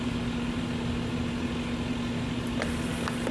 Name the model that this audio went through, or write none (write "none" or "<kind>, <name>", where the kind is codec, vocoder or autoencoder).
none